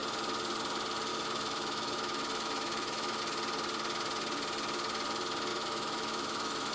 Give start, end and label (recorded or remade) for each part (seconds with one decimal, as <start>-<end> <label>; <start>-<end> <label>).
0.0-1.1 recorded; 1.1-3.2 remade; 3.2-5.5 recorded; 5.5-6.7 remade